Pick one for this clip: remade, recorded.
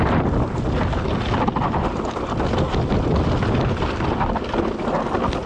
recorded